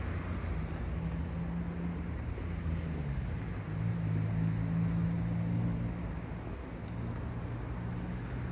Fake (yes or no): no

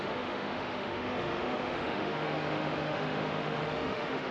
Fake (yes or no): yes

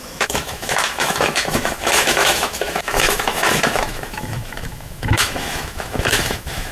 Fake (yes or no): yes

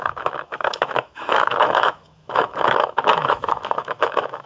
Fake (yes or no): yes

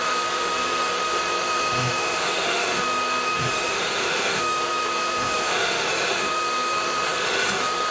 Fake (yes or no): yes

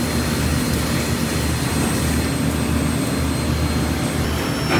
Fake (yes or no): no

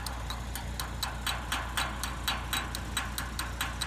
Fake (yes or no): no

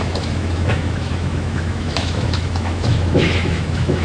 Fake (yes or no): yes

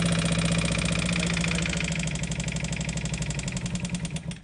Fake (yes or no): no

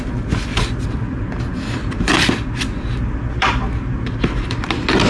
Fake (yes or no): no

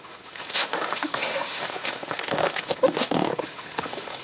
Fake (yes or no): yes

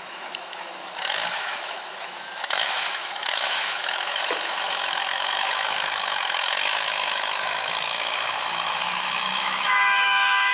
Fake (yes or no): yes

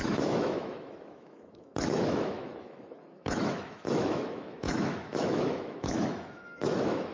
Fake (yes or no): yes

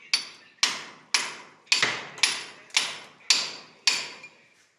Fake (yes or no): no